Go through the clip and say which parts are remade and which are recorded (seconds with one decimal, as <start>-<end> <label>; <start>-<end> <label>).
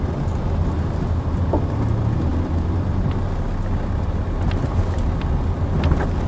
0.0-6.3 recorded